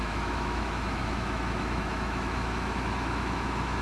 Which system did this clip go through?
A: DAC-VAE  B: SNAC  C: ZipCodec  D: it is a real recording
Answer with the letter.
A